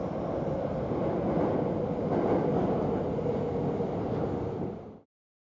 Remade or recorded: recorded